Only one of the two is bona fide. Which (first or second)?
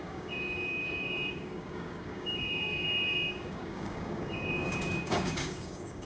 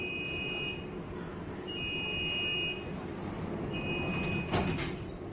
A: second